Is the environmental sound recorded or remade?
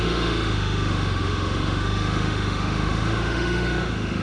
remade